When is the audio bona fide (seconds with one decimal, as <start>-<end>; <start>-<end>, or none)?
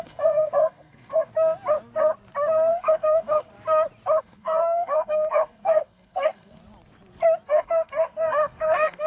1.3-2.7; 3.5-4.2; 6.6-7.5